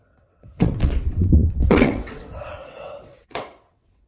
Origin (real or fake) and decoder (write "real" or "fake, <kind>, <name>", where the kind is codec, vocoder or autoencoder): fake, vocoder, WaveNeXt